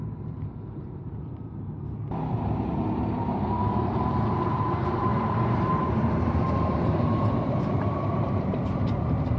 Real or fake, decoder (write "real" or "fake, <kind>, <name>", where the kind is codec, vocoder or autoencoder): fake, vocoder, BigVGAN v2